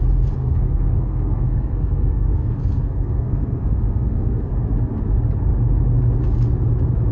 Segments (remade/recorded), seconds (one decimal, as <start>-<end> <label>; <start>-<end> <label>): 0.0-0.4 recorded; 0.4-4.5 remade; 4.5-7.1 recorded